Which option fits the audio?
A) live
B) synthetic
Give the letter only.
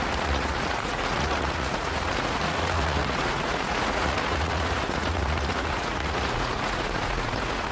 B